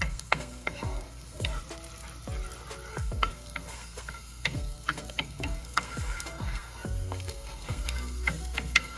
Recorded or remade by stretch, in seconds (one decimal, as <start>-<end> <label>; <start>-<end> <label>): 0.0-1.5 remade; 1.5-2.9 recorded; 2.9-9.0 remade